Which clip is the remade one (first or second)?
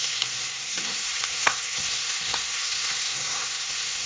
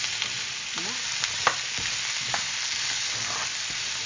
first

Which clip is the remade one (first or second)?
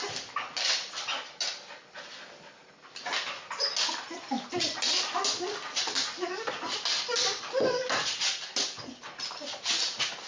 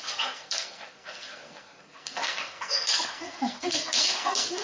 second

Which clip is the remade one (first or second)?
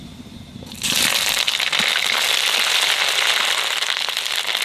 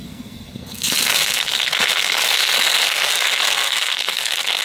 second